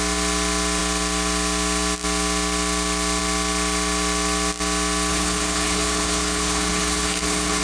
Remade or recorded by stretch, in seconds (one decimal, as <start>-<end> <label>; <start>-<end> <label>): 0.0-5.1 recorded; 5.1-7.6 remade